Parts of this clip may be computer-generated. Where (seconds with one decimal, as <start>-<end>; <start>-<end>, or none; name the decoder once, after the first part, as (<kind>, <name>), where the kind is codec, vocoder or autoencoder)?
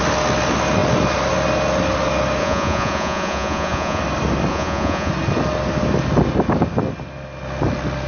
2.4-4.0 (vocoder, Vocos); 4.5-5.1